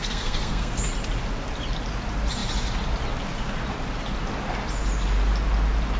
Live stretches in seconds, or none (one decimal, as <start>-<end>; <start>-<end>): 0.8-6.0